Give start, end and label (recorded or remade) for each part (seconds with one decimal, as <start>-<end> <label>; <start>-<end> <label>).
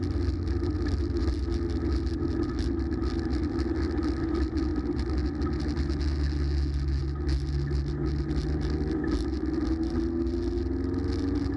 0.0-11.6 recorded